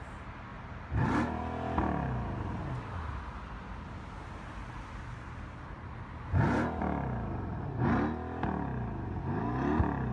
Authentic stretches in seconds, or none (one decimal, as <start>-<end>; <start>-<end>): 0.0-10.1